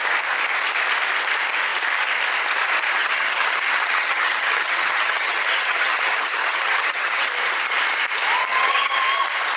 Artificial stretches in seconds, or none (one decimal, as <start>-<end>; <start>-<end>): 3.0-7.3; 8.5-9.0